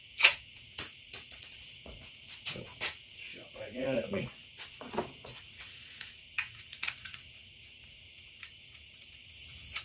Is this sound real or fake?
fake